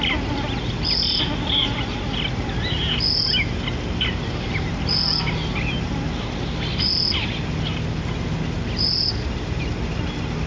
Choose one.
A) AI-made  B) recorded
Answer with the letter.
B